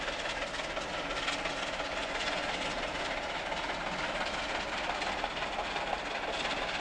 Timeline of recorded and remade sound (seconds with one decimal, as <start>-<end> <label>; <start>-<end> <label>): 0.0-2.0 recorded; 2.0-2.5 remade; 2.5-6.8 recorded